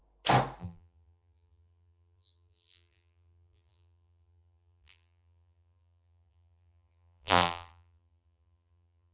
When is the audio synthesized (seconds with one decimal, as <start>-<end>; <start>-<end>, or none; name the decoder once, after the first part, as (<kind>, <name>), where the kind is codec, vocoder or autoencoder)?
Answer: 0.6-9.1 (vocoder, BigVGAN v2)